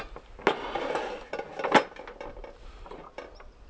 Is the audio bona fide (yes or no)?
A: yes